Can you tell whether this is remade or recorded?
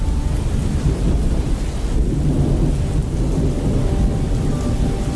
recorded